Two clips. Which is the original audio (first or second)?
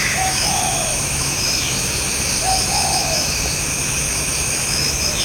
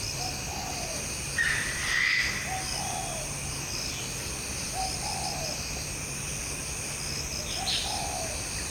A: second